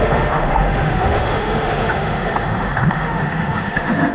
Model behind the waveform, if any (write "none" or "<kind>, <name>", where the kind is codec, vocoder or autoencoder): autoencoder, DAC-VAE